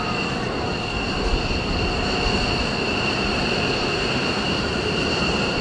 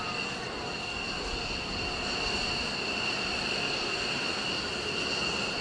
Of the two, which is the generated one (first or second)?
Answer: first